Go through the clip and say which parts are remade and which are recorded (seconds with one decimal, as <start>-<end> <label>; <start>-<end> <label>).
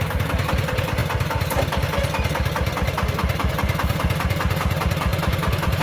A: 0.0-5.8 recorded